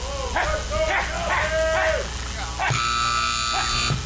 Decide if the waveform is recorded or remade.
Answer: recorded